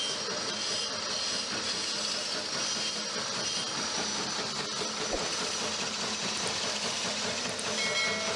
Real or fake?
real